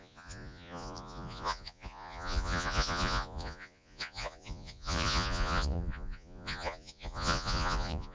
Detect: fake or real fake